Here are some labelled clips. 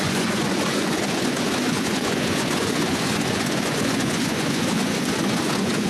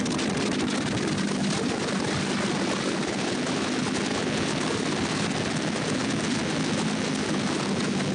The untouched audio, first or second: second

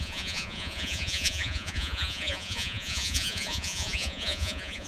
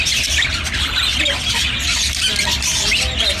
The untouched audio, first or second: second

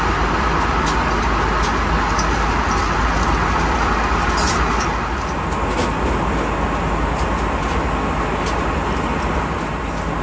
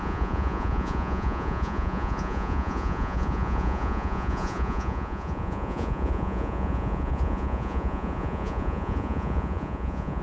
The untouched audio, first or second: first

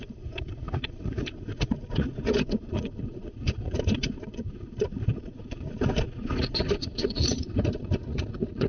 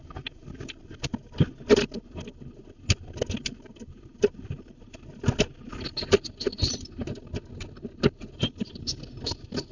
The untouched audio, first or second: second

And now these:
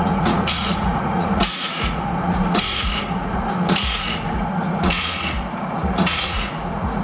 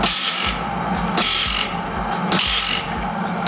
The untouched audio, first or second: second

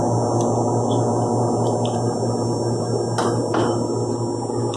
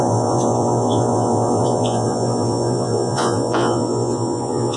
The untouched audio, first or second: first